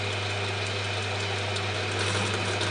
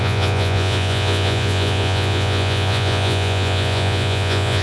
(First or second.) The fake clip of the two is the second